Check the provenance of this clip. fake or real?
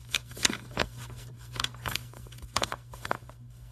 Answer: fake